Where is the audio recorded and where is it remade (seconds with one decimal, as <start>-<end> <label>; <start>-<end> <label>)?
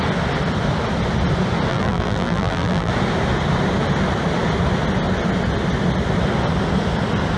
0.0-1.7 recorded; 1.7-2.9 remade; 2.9-7.4 recorded